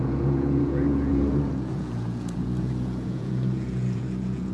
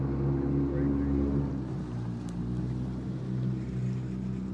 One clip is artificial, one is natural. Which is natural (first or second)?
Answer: second